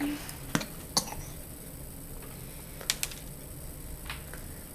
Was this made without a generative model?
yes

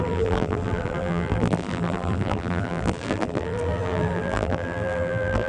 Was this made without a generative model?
no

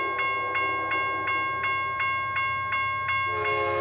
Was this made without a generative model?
yes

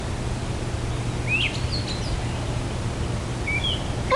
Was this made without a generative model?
yes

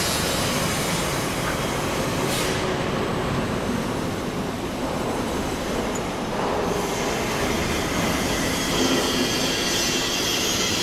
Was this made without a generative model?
yes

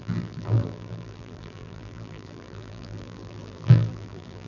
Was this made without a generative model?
no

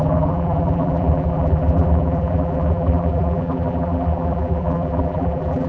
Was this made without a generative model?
no